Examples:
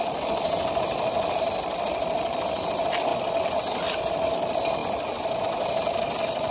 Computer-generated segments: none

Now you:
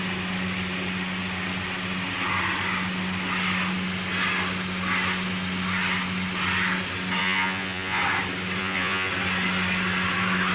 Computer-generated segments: 7.2-8.0 (vocoder, Vocos); 8.6-9.1

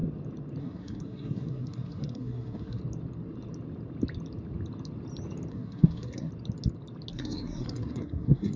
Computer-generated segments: 0.6-2.8 (codec, SNAC); 5.5-6.3; 7.1-8.6